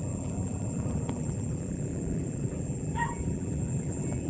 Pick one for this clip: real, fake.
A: fake